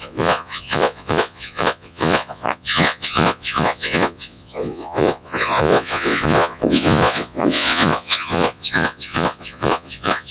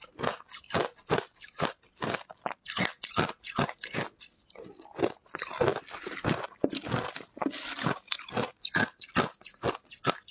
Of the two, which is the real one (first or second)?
second